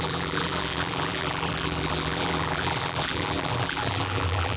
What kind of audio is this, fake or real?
fake